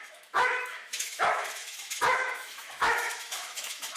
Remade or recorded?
remade